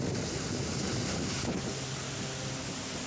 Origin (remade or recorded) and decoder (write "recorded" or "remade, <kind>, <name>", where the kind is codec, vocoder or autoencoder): recorded